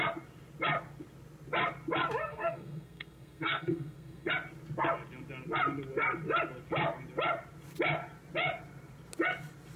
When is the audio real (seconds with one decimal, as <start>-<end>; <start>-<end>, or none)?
0.0-2.2; 4.3-9.8